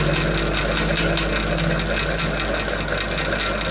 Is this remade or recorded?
recorded